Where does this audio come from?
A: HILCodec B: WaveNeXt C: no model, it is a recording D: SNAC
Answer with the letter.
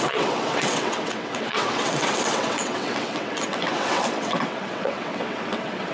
B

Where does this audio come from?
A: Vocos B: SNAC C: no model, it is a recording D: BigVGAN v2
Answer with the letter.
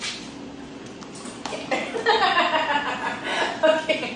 C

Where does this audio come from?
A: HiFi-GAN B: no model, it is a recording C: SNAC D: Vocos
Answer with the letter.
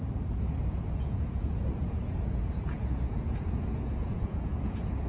D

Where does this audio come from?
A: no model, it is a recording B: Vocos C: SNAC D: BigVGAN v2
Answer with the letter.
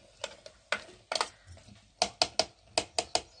A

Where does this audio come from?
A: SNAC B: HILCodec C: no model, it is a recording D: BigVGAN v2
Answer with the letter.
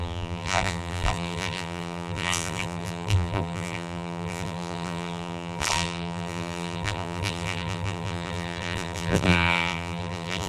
D